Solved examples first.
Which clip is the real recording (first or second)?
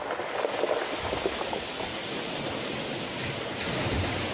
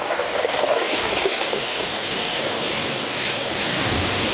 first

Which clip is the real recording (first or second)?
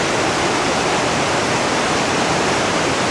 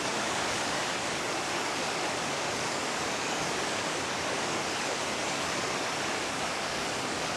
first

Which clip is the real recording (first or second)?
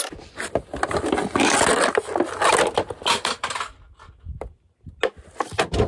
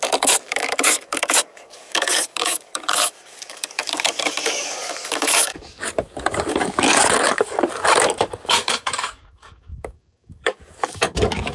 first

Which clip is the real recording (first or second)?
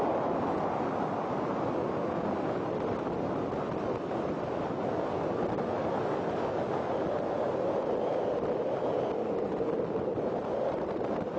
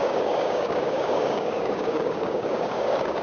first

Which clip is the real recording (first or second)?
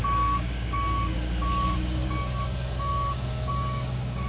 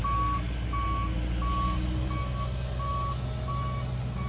second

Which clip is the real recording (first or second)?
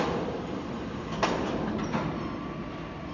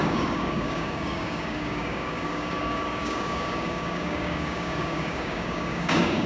first